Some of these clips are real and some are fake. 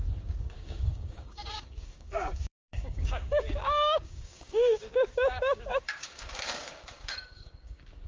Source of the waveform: fake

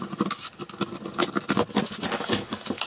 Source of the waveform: real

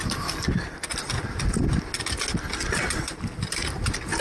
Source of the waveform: real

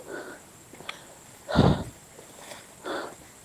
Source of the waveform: real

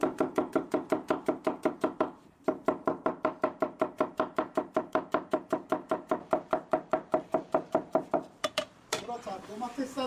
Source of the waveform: fake